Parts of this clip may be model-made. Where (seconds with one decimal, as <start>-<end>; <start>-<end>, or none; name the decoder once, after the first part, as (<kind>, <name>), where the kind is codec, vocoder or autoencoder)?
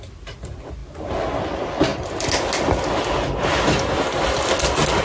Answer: none